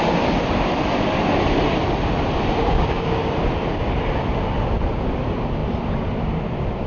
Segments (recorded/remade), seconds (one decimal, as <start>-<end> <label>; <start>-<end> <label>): 0.0-2.6 recorded; 2.6-3.2 remade; 3.2-6.9 recorded